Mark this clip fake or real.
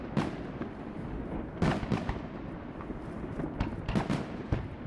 fake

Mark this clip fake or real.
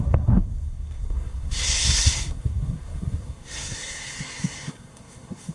fake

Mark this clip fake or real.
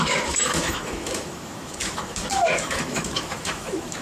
fake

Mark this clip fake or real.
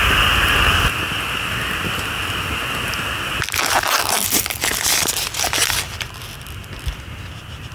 real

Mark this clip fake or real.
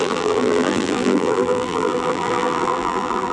fake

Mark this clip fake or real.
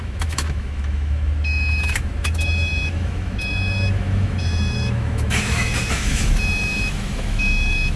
fake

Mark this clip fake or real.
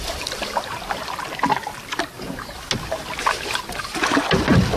real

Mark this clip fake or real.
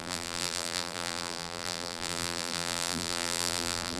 fake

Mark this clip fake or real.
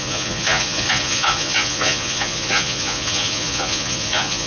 fake